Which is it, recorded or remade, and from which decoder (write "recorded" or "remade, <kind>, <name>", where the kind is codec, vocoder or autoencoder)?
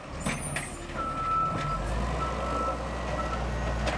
recorded